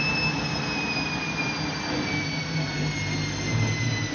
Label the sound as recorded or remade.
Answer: recorded